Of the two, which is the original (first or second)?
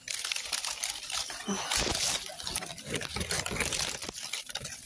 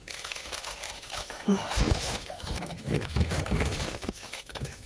first